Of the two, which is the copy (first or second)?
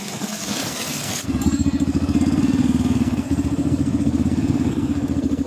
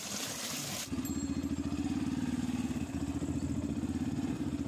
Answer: first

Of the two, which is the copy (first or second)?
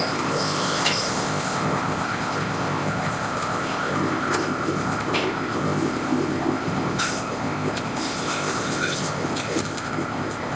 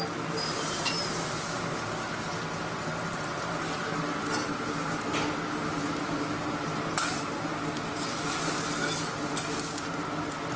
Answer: first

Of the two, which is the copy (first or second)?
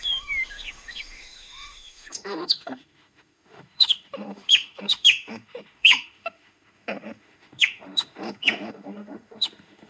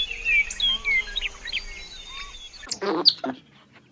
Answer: first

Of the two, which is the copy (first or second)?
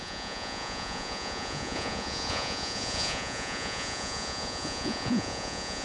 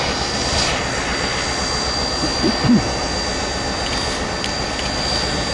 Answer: first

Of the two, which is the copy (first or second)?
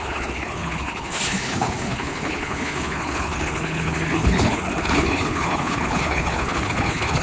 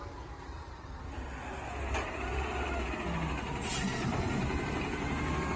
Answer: first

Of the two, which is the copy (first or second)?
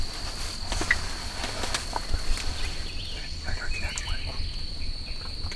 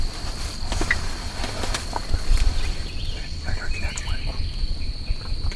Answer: second